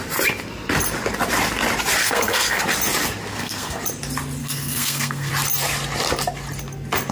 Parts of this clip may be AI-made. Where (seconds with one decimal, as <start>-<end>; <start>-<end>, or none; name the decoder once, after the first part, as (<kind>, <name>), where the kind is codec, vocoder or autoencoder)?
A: 2.0-2.6 (codec, SNAC); 3.3-3.8; 4.4-5.3